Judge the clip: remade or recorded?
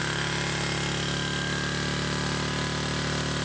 recorded